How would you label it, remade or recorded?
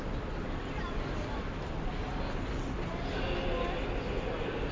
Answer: recorded